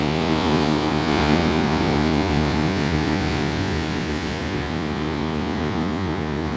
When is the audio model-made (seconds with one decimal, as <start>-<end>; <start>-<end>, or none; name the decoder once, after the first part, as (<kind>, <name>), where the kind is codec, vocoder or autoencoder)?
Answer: 0.0-6.6 (vocoder, Vocos)